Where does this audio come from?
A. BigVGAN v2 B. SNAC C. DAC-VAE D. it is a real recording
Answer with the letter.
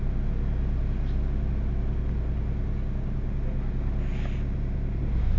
D